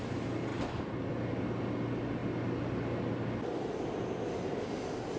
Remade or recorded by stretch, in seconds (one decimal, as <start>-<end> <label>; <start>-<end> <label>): 0.0-0.5 recorded; 0.5-1.1 remade; 1.1-5.2 recorded